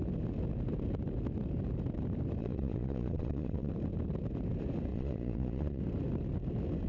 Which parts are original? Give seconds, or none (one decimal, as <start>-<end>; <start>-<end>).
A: 0.0-2.4; 3.7-4.9; 5.8-6.9